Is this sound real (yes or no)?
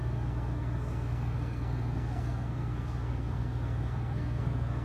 no